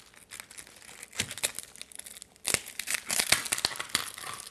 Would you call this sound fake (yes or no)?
no